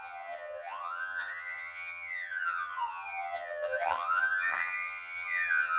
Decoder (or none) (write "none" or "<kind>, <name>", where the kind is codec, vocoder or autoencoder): vocoder, HiFi-GAN